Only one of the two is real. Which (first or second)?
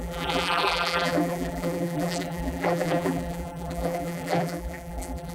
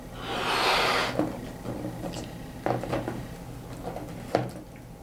second